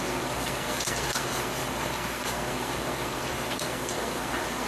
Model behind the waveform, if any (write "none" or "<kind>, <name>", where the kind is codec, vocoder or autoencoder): codec, SNAC